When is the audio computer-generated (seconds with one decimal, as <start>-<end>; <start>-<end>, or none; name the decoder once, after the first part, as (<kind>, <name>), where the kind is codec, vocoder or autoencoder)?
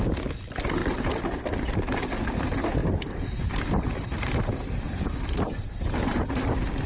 2.8-6.9 (vocoder, BigVGAN v2)